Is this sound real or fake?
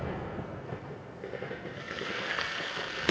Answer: fake